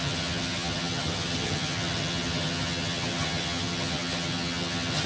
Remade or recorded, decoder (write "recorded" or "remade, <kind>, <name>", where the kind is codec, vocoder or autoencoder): remade, vocoder, HiFi-GAN